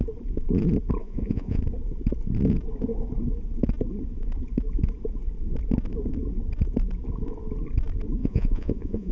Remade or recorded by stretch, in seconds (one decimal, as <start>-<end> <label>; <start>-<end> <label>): 0.0-1.0 recorded; 1.0-1.6 remade; 1.6-8.2 recorded; 8.2-9.1 remade